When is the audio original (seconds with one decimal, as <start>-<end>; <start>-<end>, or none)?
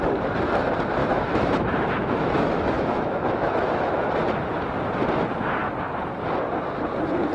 0.0-1.0; 4.1-7.3